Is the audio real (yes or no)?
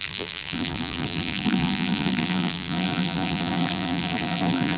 no